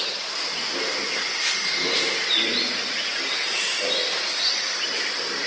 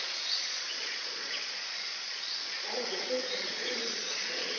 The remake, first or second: second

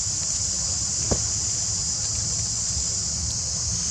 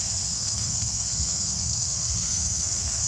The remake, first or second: second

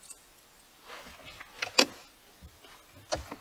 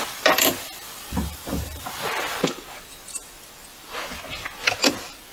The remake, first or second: second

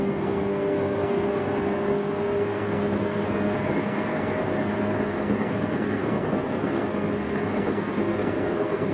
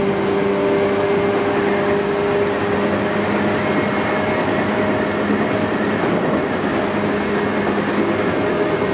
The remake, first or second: first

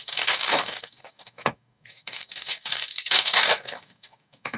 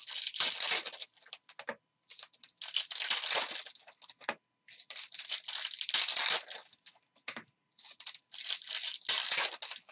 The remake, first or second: first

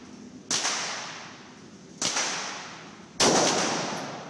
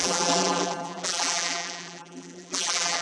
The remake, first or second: second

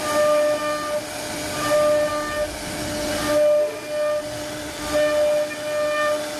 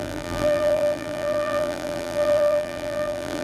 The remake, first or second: second